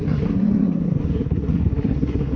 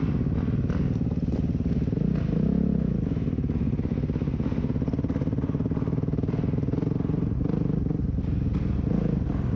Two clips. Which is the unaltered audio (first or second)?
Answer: second